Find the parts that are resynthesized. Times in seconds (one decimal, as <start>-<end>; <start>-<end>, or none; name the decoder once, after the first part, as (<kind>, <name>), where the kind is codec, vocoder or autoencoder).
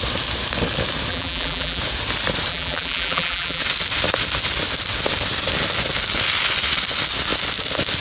1.1-1.8 (vocoder, BigVGAN v2); 2.5-3.6